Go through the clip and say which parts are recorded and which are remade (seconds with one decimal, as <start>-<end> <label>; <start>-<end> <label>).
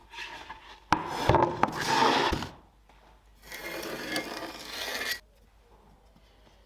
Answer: 0.0-6.7 recorded